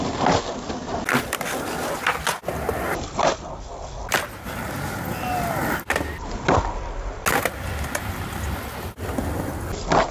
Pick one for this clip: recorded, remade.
recorded